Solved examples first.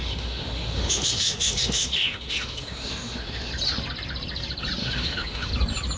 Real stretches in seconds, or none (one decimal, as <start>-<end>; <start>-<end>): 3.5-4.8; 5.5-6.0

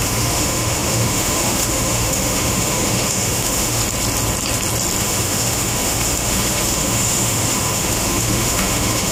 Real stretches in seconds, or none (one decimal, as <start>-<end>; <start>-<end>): 3.8-5.0

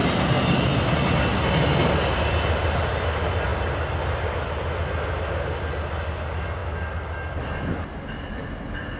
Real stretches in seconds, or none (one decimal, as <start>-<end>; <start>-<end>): 0.0-9.0

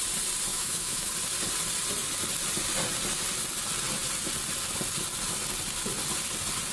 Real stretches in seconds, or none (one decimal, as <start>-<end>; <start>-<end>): 0.0-0.5; 1.1-6.7

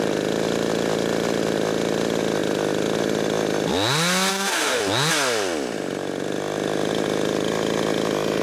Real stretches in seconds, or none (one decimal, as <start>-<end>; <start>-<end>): 0.0-4.3; 4.8-8.4